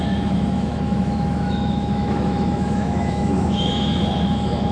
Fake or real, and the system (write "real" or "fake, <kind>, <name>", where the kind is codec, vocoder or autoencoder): fake, autoencoder, DAC-VAE